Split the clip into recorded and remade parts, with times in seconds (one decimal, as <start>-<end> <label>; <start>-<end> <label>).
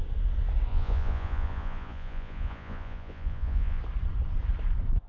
0.0-0.7 recorded; 0.7-3.8 remade; 3.8-5.1 recorded